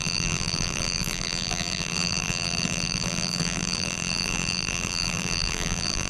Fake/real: fake